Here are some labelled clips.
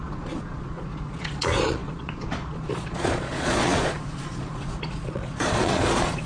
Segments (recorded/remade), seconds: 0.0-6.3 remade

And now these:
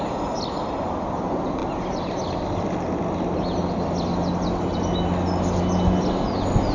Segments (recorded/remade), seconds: 0.0-6.7 recorded